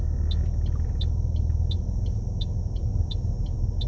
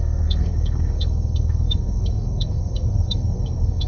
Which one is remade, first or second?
second